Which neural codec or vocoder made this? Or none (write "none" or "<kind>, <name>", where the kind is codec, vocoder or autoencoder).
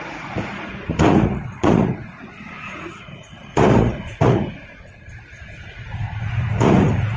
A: vocoder, Vocos